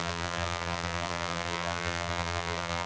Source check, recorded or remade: remade